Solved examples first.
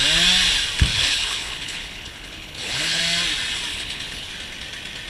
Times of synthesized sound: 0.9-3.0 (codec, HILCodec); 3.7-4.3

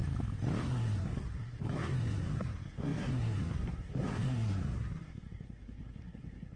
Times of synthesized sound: 0.6-6.6 (codec, SNAC)

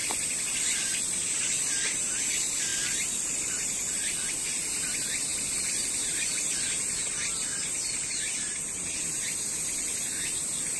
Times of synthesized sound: 0.0-2.0 (vocoder, BigVGAN v2); 2.7-4.4

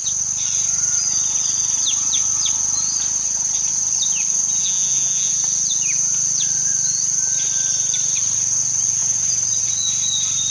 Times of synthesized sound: 4.6-5.3 (vocoder, Vocos)